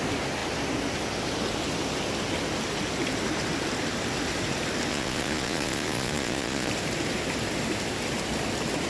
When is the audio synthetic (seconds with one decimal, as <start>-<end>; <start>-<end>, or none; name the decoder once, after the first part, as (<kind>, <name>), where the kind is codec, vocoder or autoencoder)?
4.9-6.7 (vocoder, Vocos)